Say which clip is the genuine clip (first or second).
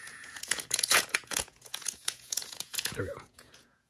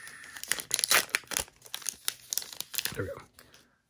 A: second